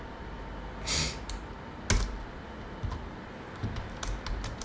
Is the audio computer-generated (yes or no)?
no